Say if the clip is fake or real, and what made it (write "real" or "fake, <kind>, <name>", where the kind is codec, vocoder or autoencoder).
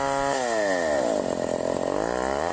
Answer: real